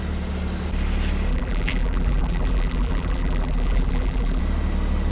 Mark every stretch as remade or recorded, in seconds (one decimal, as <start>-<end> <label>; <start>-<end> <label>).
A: 0.0-1.3 recorded; 1.3-4.4 remade; 4.4-5.1 recorded